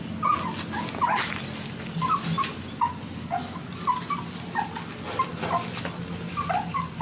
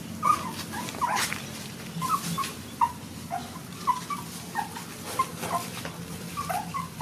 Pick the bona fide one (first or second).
first